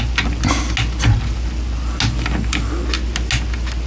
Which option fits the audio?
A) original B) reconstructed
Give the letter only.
A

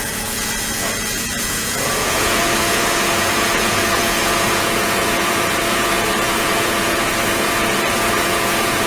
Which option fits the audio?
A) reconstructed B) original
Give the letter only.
A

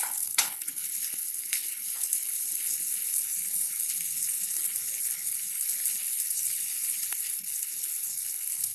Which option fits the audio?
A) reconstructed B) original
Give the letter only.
A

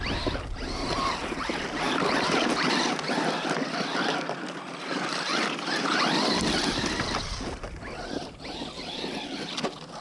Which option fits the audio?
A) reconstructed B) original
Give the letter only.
B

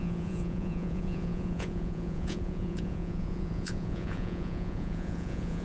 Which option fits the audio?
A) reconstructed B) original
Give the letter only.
A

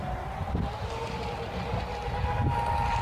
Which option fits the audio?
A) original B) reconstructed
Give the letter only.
A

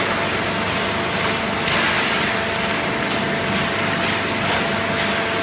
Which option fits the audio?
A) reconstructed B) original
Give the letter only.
B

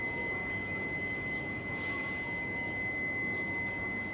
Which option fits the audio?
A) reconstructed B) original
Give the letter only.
B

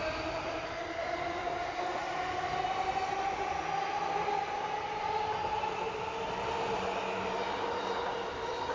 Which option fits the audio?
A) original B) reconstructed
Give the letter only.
A